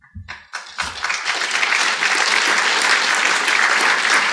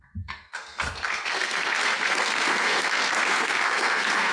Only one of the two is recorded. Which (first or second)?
first